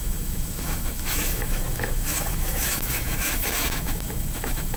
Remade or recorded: remade